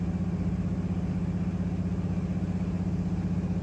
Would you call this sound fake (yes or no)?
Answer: no